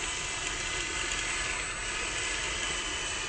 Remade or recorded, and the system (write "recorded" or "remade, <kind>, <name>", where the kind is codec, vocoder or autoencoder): recorded